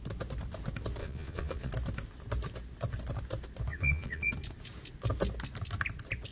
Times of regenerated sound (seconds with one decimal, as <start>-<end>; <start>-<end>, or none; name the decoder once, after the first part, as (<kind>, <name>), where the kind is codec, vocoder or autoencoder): 1.0-1.7 (vocoder, Vocos); 3.7-4.3